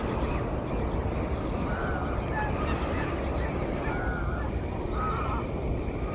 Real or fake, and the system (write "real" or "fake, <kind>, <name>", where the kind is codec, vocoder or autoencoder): fake, vocoder, BigVGAN v2